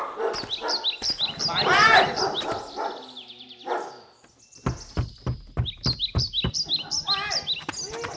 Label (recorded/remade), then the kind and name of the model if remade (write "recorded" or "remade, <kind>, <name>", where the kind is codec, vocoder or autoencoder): recorded